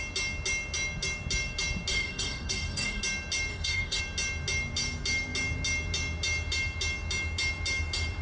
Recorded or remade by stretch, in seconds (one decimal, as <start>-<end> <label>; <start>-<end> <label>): 0.0-1.9 recorded; 1.9-3.0 remade; 3.0-3.5 recorded; 3.5-4.0 remade; 4.0-8.2 recorded